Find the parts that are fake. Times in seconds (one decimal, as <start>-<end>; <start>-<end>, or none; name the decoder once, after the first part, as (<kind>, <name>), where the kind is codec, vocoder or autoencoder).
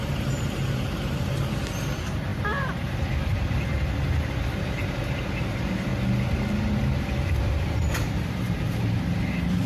0.0-5.9 (vocoder, BigVGAN v2); 7.5-9.7